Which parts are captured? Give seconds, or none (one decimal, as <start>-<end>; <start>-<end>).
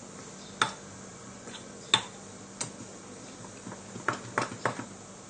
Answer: 0.0-1.1; 1.7-5.3